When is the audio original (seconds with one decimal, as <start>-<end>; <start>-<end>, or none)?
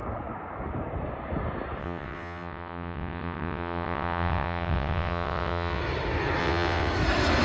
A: 0.0-1.8; 5.8-6.4; 6.9-7.4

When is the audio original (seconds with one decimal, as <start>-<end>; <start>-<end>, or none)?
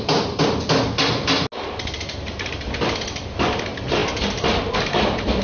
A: 0.0-5.4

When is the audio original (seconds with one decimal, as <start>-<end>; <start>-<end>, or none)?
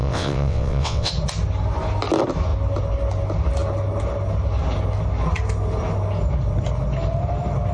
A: 1.1-7.7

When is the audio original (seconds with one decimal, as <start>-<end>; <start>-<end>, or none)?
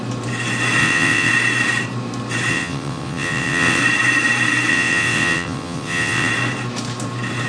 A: 0.0-0.8; 1.3-2.5; 3.8-4.7; 6.3-7.5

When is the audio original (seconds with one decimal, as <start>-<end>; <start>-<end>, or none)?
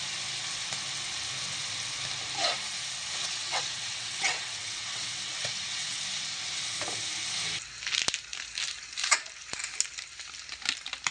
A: 0.0-3.2; 6.0-11.1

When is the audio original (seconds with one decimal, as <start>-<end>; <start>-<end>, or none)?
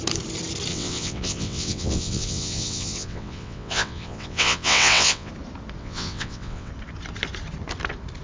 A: 0.0-0.7; 5.3-5.8; 6.7-8.2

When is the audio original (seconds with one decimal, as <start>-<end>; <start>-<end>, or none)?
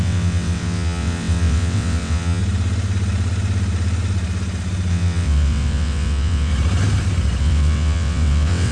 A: 2.4-4.9; 6.5-7.4